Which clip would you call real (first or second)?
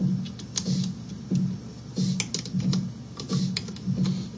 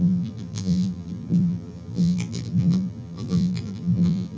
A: first